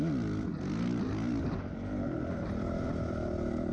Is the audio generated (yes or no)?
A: no